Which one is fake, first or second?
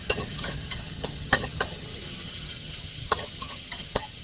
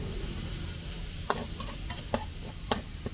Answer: first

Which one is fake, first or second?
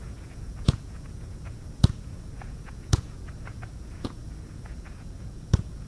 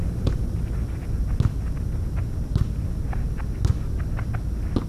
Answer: first